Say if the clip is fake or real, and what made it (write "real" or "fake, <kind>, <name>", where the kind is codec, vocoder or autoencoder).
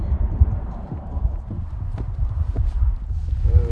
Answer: fake, vocoder, BigVGAN v2